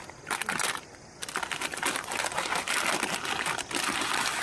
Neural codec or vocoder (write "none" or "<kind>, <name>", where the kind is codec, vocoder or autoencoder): none